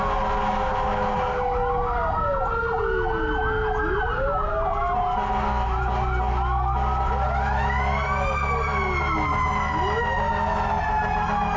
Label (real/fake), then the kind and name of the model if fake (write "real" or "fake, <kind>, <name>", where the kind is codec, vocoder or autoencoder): real